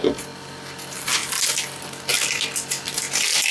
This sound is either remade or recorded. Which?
recorded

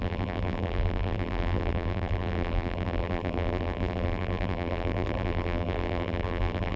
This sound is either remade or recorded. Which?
remade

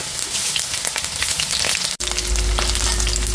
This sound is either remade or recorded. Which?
recorded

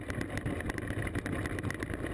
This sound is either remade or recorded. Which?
recorded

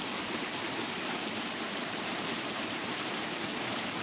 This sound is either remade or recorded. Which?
remade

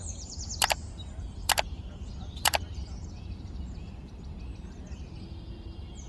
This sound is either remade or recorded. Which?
remade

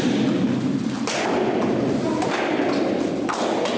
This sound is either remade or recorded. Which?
recorded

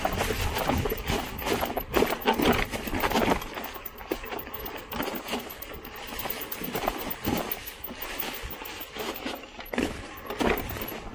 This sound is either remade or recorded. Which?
recorded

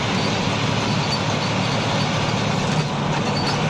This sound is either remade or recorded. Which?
recorded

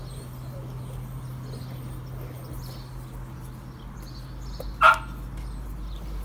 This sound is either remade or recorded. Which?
recorded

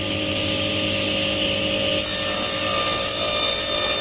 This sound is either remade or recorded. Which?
recorded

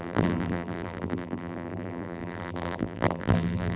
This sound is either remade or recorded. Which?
remade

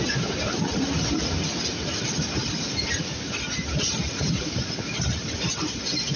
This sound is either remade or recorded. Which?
recorded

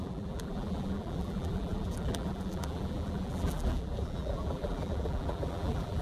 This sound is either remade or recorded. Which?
remade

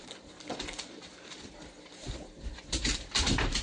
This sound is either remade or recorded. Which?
remade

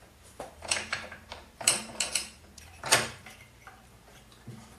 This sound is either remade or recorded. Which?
remade